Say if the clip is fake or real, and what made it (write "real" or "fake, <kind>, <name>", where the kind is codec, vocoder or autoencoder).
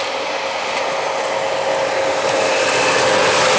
real